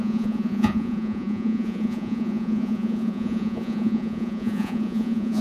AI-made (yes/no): yes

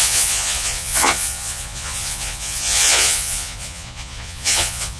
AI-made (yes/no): yes